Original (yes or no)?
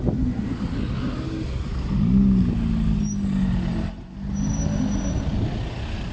yes